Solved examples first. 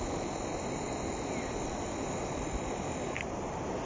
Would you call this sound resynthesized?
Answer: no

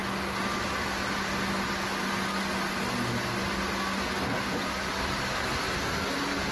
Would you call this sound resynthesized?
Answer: no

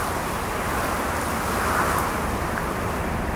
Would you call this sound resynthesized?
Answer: no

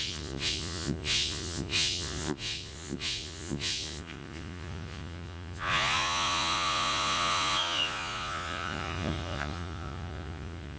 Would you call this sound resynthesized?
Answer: yes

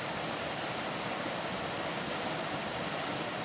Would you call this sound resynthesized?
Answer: no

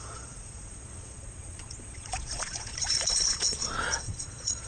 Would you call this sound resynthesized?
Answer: yes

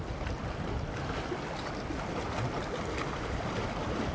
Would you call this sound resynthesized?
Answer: no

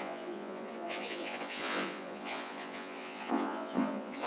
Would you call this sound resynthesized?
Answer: yes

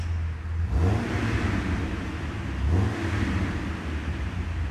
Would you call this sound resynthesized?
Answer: no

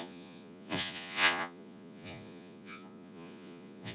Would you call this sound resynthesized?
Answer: yes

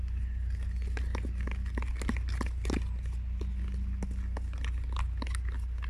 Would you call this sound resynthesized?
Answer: no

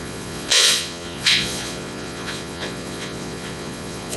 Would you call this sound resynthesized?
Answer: yes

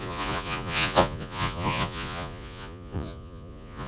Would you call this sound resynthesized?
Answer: yes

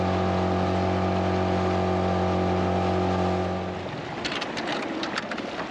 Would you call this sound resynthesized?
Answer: no